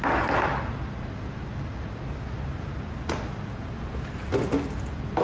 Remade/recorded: recorded